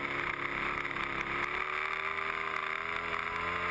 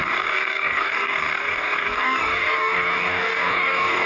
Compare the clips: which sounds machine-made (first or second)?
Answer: second